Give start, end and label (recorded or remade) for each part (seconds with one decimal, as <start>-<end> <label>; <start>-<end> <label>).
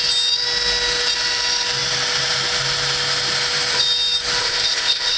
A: 0.0-4.4 recorded; 4.4-5.2 remade